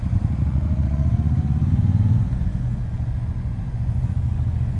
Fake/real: fake